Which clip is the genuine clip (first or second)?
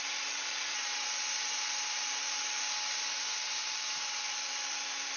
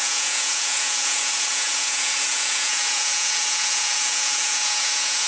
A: first